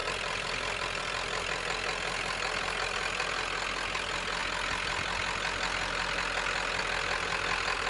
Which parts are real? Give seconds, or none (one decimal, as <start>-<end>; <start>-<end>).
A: 1.0-7.9